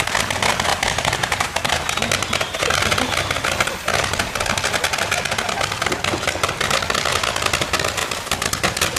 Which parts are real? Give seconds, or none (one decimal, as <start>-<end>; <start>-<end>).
0.0-0.7; 2.8-9.0